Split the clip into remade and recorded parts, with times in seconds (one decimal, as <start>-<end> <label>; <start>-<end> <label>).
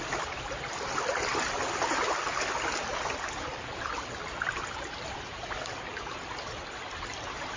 0.0-7.6 recorded